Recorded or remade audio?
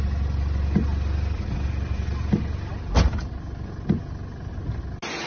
recorded